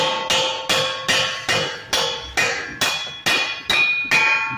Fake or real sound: real